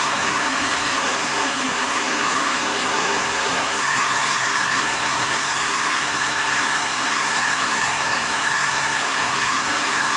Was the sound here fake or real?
fake